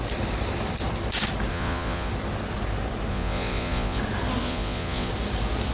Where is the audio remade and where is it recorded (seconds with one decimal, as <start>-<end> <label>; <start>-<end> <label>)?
0.0-1.5 recorded; 1.5-2.1 remade; 2.1-3.1 recorded; 3.1-4.0 remade; 4.0-4.4 recorded; 4.4-5.1 remade; 5.1-5.7 recorded